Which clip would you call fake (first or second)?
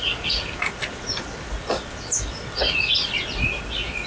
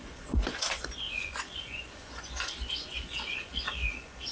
second